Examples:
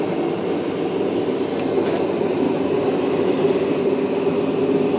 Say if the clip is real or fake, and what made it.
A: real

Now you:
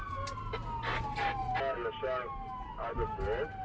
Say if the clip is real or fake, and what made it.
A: real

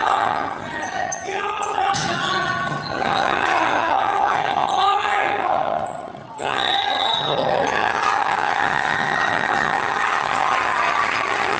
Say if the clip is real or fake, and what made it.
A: fake, vocoder, HiFi-GAN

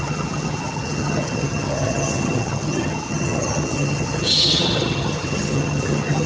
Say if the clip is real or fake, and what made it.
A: fake, vocoder, HiFi-GAN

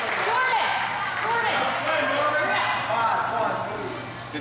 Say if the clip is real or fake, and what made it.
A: real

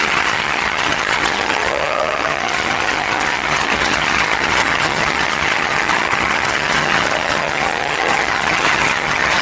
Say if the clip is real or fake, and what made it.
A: fake, vocoder, HiFi-GAN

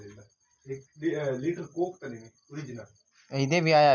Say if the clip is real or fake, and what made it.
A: real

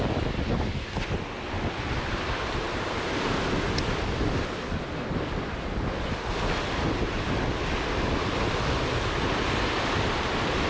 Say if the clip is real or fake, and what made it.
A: real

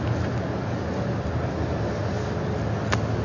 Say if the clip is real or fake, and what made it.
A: real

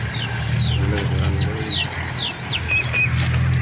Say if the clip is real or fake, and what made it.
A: real